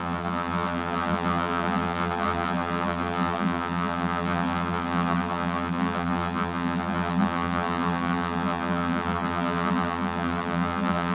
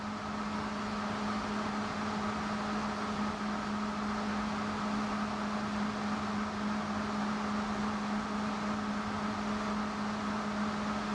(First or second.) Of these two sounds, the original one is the second